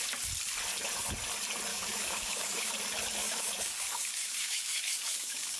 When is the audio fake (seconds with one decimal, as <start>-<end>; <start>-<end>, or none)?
1.7-2.7; 3.2-5.6